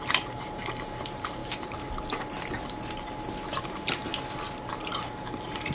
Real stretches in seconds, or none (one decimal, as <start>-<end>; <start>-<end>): 1.4-3.6; 4.1-4.7